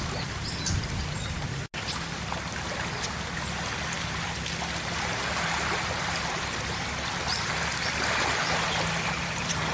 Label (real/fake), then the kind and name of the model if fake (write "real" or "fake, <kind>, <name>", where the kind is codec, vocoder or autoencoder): real